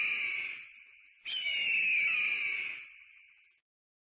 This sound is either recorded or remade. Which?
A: recorded